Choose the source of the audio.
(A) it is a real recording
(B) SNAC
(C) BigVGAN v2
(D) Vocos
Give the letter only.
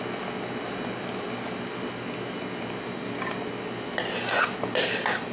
A